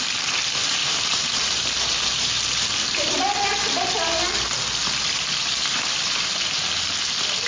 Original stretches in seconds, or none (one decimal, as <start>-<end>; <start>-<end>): 0.0-0.8; 3.2-4.8; 6.0-7.5

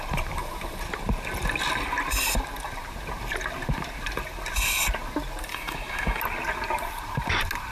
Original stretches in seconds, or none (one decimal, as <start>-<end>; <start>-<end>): 0.0-5.5; 6.2-7.7

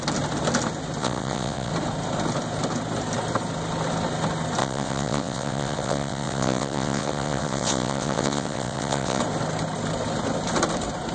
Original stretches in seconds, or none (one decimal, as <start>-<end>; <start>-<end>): 0.0-1.0; 1.7-4.6; 9.2-11.1

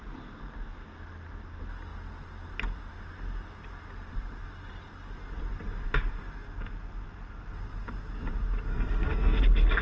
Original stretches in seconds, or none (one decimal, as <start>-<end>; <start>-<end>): 0.0-8.7; 9.4-9.8

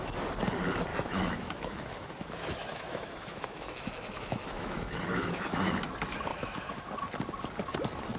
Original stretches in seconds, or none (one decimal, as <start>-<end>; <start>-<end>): 0.0-0.9; 5.8-6.3; 7.0-8.2

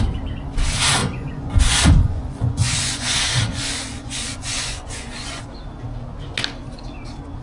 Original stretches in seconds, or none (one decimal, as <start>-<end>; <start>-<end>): 0.0-1.0; 5.4-7.4

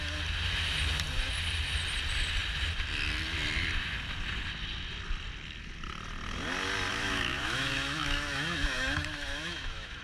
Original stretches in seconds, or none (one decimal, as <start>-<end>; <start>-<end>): 0.0-6.9